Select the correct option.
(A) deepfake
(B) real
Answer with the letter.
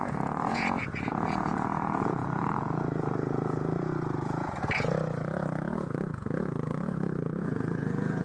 A